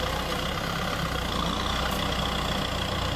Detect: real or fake real